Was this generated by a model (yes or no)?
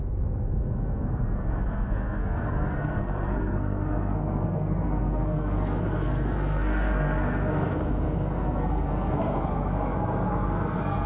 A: yes